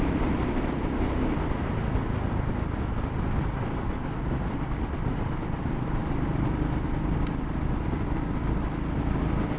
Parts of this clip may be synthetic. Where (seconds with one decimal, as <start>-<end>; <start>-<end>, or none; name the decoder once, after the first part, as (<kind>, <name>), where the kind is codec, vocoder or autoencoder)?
none